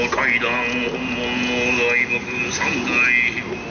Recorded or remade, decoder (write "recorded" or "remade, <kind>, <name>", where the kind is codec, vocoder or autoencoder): recorded